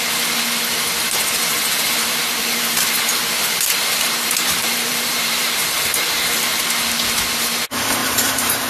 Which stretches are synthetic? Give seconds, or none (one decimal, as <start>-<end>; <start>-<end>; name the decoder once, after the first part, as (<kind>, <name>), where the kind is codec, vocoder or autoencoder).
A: 1.5-6.6 (vocoder, BigVGAN v2); 8.0-8.7